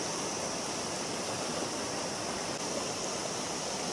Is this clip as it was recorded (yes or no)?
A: yes